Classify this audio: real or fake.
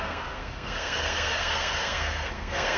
fake